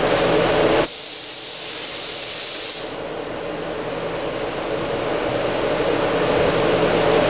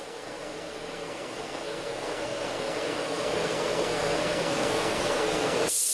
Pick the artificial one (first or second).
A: second